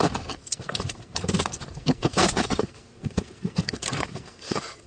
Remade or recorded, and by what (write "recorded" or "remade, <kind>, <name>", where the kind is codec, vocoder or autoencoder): remade, codec, SNAC